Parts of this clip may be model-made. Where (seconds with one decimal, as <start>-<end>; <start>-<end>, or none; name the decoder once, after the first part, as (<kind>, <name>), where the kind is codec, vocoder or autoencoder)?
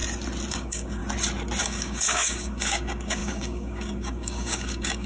0.5-1.0 (codec, DAC); 1.6-5.1